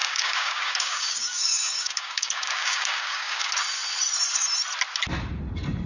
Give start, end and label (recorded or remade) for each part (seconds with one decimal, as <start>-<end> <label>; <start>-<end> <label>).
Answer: 0.0-3.5 remade; 3.5-5.9 recorded